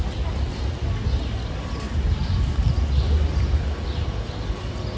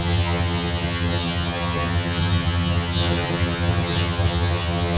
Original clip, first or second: first